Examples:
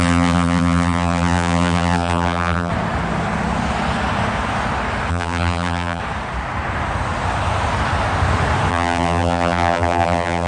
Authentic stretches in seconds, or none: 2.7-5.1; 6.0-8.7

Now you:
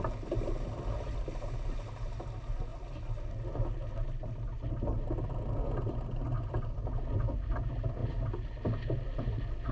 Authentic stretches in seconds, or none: 0.0-9.7

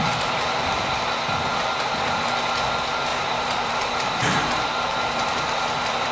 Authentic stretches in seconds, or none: 0.0-3.1; 3.7-6.1

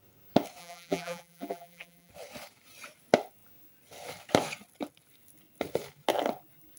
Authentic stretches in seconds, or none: 0.0-0.6; 2.1-6.8

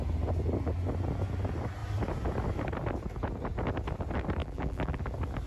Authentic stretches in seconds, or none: 0.0-4.4; 5.0-5.5